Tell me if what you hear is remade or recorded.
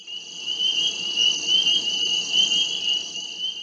recorded